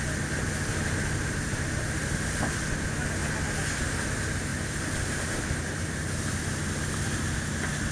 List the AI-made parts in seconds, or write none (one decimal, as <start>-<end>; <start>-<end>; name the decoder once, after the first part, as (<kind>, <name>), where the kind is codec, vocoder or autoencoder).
0.7-2.5 (vocoder, BigVGAN v2); 4.5-6.4